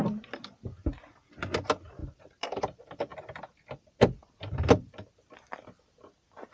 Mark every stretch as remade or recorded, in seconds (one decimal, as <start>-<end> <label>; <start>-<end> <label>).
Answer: 0.0-3.1 recorded; 3.1-4.2 remade; 4.2-6.5 recorded